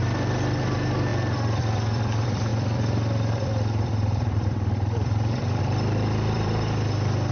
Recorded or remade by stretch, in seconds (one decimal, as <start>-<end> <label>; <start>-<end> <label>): 0.0-7.3 remade